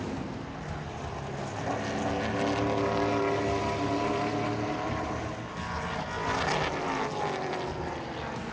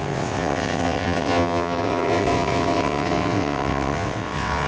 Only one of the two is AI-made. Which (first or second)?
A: second